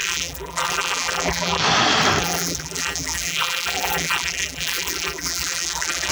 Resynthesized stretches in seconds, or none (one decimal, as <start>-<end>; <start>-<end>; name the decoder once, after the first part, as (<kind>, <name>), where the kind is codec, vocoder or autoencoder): 0.0-1.6 (vocoder, BigVGAN v2); 2.2-6.1